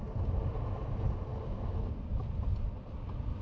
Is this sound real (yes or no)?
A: yes